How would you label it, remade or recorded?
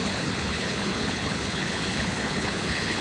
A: remade